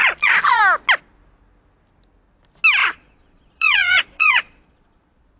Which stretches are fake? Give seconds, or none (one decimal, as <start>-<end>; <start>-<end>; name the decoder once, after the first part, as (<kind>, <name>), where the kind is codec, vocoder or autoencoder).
0.0-0.6 (vocoder, Vocos); 2.8-5.4